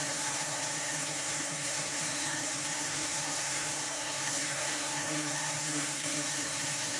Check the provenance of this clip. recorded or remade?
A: remade